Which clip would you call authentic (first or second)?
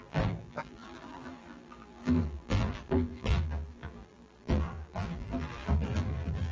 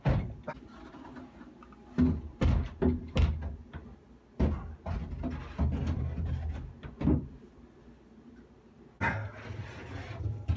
second